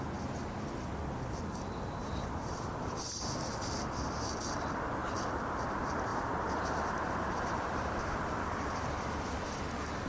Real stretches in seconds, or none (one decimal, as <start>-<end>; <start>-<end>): 0.0-2.0; 3.2-5.0; 5.6-6.1; 9.5-10.1